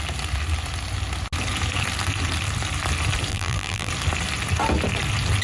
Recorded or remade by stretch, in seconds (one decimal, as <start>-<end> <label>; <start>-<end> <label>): 0.0-3.3 recorded; 3.3-3.9 remade; 3.9-5.4 recorded